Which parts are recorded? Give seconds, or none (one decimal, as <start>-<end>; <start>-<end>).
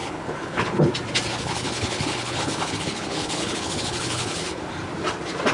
0.9-1.3; 4.6-5.5